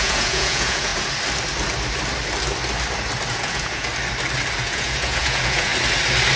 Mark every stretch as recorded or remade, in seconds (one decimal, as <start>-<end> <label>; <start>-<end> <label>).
0.0-0.9 remade; 0.9-3.3 recorded; 3.3-3.9 remade; 3.9-4.6 recorded; 4.6-5.7 remade; 5.7-6.4 recorded